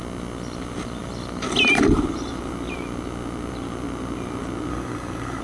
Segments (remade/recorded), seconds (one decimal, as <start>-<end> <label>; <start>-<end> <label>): 0.0-4.7 recorded; 4.7-5.4 remade